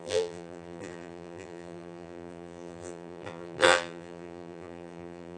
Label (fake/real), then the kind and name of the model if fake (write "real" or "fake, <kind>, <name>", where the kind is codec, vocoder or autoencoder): fake, vocoder, BigVGAN v2